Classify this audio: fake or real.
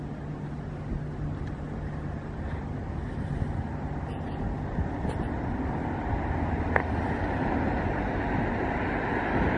real